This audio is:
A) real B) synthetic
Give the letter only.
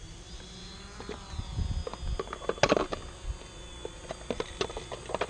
A